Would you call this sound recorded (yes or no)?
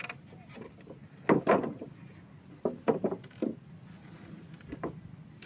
yes